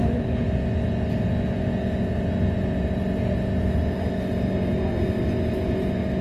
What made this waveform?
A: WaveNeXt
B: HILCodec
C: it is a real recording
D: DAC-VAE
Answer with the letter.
C